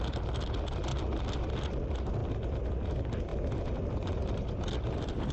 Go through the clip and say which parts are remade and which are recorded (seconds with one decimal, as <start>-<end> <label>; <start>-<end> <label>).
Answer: 0.0-5.3 recorded